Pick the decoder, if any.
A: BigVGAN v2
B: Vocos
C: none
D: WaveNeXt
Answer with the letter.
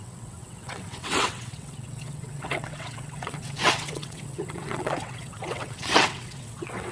D